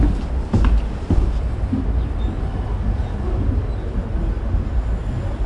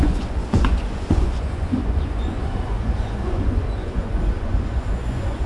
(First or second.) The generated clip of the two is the second